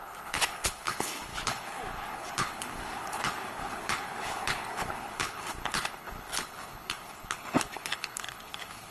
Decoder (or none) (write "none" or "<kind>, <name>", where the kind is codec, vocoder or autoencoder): codec, HILCodec